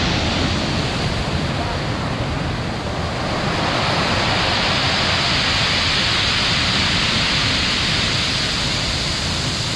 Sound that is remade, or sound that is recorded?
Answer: recorded